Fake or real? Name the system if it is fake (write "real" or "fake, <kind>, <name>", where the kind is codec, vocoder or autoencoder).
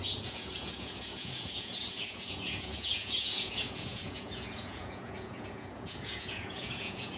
fake, vocoder, Vocos